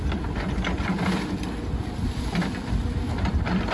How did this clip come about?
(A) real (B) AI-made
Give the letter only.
B